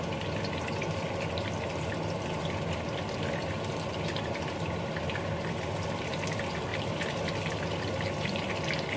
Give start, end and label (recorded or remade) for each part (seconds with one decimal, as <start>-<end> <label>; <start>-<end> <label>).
0.0-6.7 recorded; 6.7-8.5 remade; 8.5-9.0 recorded